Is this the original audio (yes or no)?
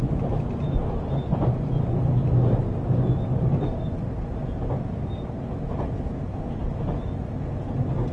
yes